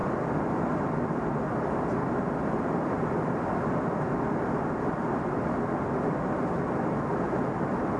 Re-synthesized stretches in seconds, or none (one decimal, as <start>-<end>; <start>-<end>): none